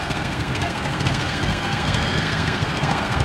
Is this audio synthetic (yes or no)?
yes